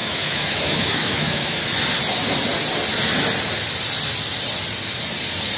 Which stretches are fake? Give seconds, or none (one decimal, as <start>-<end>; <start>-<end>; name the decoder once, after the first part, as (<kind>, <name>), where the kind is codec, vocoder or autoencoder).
0.0-1.6 (autoencoder, DAC-VAE)